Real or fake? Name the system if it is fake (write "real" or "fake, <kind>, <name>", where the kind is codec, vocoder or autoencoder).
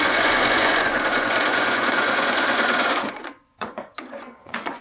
fake, vocoder, Vocos